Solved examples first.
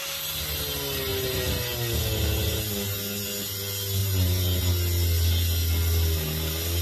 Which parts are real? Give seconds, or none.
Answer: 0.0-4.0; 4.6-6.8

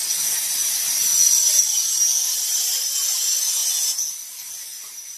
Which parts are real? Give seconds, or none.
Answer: 0.0-5.2

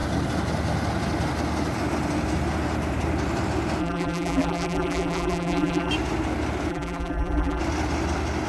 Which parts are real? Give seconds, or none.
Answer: 0.0-3.8; 5.9-6.7; 7.6-8.5

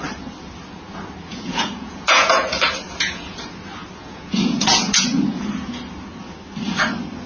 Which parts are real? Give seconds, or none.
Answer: 0.0-1.3; 3.4-4.0; 5.4-7.3

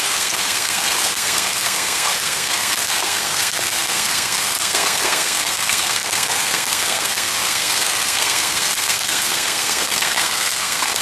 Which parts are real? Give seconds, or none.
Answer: none

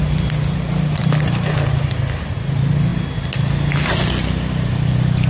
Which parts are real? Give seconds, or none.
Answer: 0.0-5.3

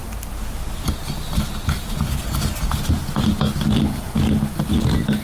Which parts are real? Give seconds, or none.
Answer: 0.0-5.2